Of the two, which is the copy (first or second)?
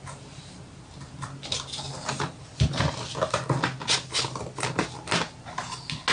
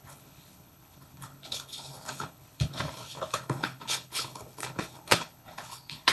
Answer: second